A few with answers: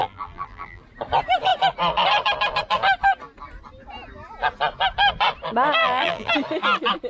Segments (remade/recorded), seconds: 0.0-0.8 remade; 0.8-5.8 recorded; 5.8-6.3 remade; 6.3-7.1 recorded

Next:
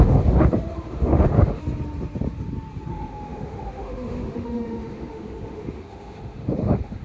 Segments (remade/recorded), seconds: 0.0-1.6 remade; 1.6-2.9 recorded; 2.9-7.0 remade

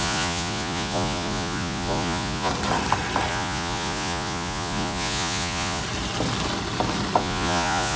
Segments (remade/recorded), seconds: 0.0-2.5 remade; 2.5-3.3 recorded; 3.3-5.8 remade; 5.8-7.2 recorded; 7.2-8.0 remade

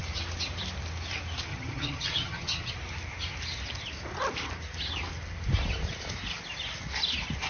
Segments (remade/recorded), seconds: 0.0-1.5 recorded; 1.5-2.7 remade; 2.7-7.5 recorded

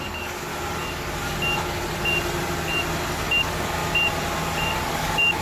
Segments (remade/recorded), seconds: 0.0-0.5 remade; 0.5-3.4 recorded; 3.4-3.8 remade; 3.8-4.9 recorded; 4.9-5.4 remade

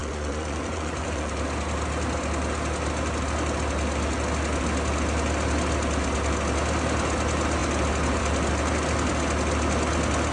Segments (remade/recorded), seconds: 0.0-1.3 remade; 1.3-10.3 recorded